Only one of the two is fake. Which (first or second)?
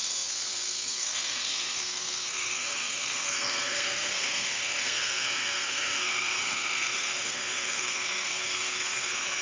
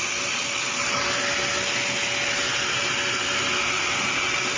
first